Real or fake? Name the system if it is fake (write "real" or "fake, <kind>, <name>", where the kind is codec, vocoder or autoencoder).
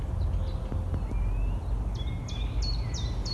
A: real